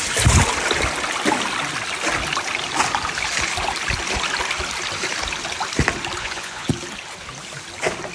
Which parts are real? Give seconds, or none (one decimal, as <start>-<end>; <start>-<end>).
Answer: 0.0-6.2; 6.7-8.1